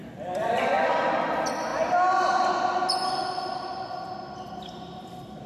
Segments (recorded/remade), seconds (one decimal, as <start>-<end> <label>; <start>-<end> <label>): 0.0-1.0 remade; 1.0-5.5 recorded

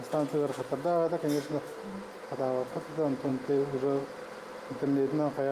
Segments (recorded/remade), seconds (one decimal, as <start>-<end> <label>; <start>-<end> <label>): 0.0-5.5 recorded

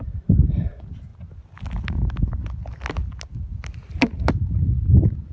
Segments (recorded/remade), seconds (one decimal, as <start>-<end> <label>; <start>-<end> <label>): 0.0-1.1 remade; 1.1-4.3 recorded; 4.3-5.3 remade

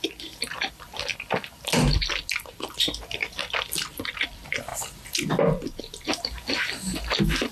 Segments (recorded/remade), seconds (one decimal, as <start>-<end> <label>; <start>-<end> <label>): 0.0-1.1 remade; 1.1-2.5 recorded; 2.5-4.7 remade; 4.7-5.8 recorded; 5.8-7.5 remade

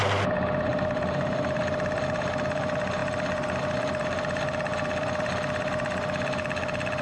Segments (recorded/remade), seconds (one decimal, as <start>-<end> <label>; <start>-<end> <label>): 0.0-0.7 recorded; 0.7-1.6 remade; 1.6-7.0 recorded

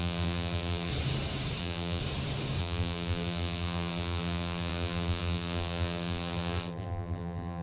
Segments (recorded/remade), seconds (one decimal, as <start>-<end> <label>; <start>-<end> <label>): 0.0-0.9 remade; 0.9-1.6 recorded; 1.6-2.0 remade; 2.0-2.6 recorded; 2.6-7.6 remade

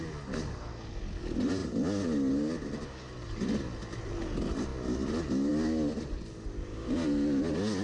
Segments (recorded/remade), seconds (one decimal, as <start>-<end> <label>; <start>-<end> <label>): 0.0-7.8 recorded